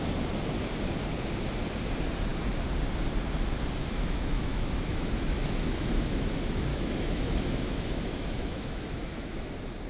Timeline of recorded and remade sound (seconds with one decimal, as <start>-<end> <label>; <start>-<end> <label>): 0.0-3.8 recorded; 3.8-6.3 remade; 6.3-6.7 recorded; 6.7-9.5 remade; 9.5-9.9 recorded